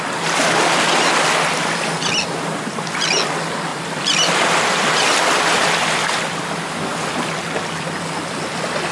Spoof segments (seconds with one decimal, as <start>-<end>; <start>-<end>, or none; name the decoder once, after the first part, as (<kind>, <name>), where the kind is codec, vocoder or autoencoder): 3.7-6.4 (vocoder, BigVGAN v2); 6.9-7.4